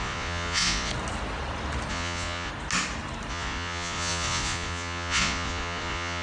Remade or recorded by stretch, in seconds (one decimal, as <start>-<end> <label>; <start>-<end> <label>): 0.0-0.9 remade; 0.9-1.9 recorded; 1.9-2.5 remade; 2.5-3.3 recorded; 3.3-6.2 remade